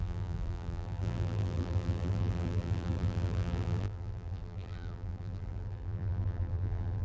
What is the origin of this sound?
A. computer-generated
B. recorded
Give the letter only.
A